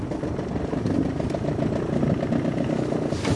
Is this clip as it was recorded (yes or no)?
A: yes